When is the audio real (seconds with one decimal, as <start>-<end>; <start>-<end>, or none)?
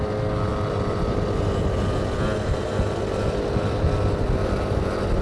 0.0-5.2